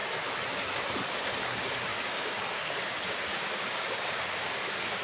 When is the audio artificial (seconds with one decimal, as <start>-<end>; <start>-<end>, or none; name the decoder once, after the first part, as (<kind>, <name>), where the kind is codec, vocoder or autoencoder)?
1.9-5.0 (codec, DAC)